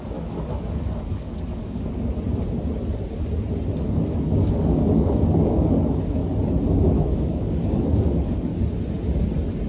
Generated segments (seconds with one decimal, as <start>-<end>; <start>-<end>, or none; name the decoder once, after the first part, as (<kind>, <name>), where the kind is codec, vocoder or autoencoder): 0.0-2.1 (codec, DAC); 3.8-6.2; 6.7-8.5